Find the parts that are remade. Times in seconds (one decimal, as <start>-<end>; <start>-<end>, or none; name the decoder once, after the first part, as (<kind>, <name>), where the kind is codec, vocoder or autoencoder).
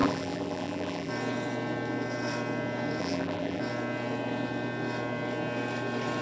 0.0-1.1 (vocoder, BigVGAN v2); 3.0-3.6